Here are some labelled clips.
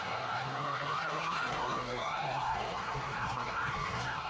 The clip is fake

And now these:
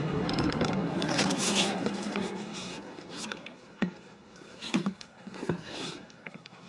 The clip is fake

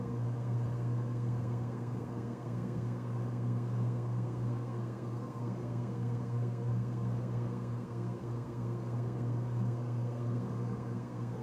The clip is fake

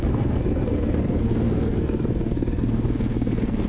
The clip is fake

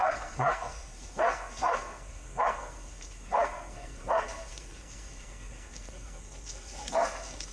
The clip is fake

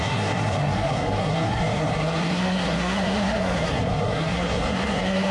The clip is fake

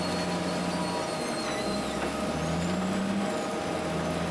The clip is real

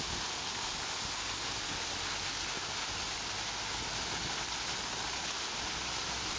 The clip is real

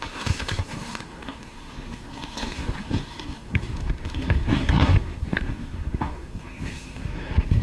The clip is fake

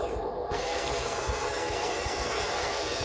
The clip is fake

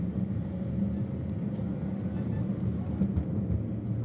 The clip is real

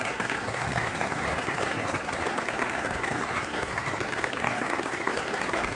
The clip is fake